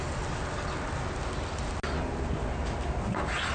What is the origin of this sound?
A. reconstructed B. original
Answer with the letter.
B